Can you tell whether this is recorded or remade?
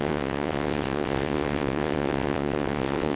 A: remade